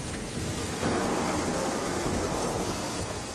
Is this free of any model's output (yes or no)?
no